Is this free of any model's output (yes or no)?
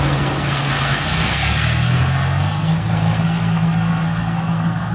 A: no